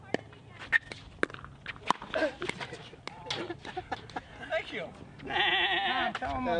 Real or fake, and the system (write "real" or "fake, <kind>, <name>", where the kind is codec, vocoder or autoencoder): real